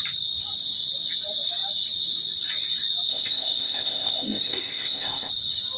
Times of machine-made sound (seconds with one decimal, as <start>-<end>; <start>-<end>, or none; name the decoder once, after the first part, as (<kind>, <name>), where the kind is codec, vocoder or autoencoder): 3.1-5.3 (codec, ZipCodec)